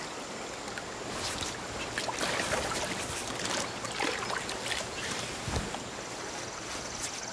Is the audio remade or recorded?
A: recorded